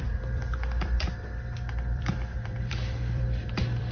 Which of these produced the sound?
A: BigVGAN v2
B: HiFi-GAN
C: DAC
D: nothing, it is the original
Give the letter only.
A